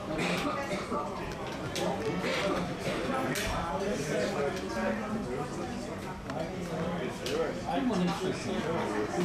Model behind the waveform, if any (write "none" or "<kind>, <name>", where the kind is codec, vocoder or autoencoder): none